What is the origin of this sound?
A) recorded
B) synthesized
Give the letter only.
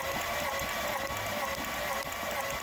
A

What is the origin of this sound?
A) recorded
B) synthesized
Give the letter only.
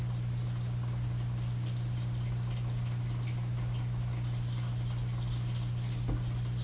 A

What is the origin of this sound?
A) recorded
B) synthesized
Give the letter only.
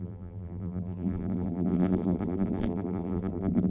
B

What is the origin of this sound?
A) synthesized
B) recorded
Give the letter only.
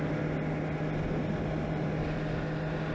B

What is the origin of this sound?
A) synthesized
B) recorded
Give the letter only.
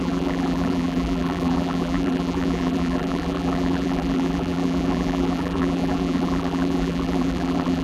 A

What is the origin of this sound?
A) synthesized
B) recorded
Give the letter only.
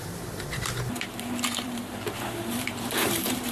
A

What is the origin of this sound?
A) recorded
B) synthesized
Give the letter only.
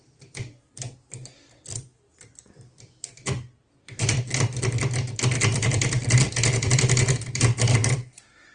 B